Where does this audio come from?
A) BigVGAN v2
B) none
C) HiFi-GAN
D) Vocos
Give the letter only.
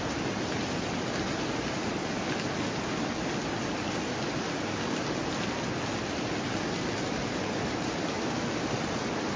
B